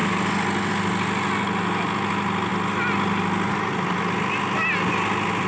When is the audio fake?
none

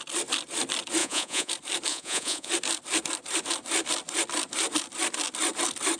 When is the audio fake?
1.0-1.5; 1.9-2.5

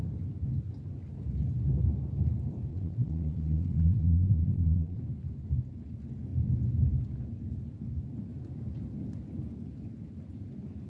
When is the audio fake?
2.7-5.0